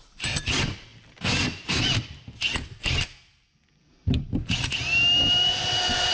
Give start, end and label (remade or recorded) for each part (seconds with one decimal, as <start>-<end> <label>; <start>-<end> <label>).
0.0-6.1 recorded